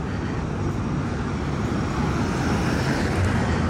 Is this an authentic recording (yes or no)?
yes